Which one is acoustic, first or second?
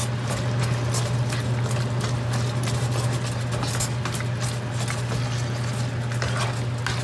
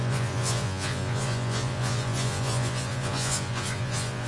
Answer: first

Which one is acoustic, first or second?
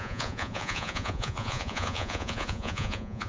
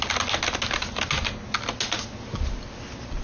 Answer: second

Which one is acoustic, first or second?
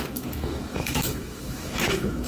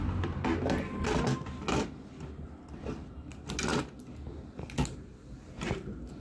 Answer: second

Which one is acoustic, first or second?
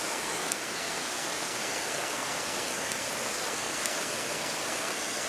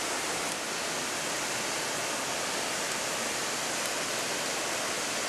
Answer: second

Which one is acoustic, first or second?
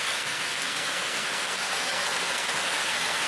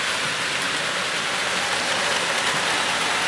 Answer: second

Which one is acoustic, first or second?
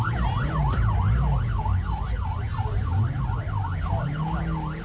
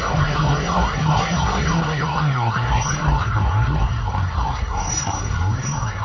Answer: first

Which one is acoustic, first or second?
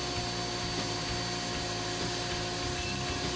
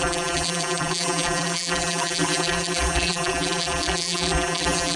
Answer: first